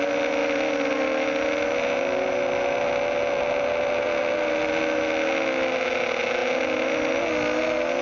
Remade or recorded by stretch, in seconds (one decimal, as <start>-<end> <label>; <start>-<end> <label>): 0.0-8.0 recorded